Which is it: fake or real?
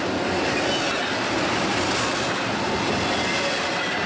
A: real